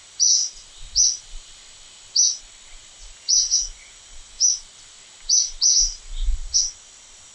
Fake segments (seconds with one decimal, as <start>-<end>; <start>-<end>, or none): 3.0-4.5